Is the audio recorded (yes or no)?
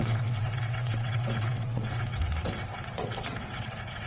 no